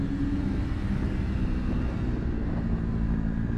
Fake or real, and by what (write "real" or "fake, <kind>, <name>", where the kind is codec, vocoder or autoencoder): real